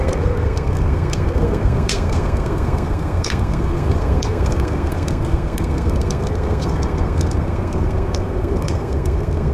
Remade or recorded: remade